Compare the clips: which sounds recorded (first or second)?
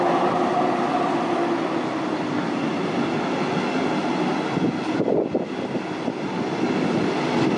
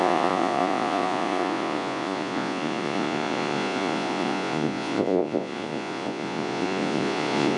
first